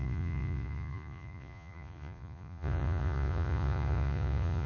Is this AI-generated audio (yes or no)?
yes